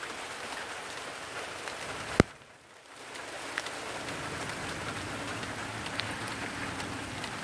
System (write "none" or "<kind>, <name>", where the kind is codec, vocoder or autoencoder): none